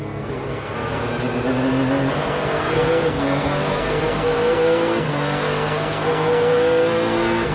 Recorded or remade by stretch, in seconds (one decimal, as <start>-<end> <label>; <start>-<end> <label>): 0.0-1.0 remade; 1.0-2.2 recorded; 2.2-7.5 remade